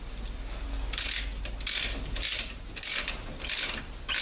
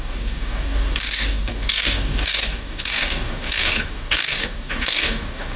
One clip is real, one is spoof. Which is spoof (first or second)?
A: second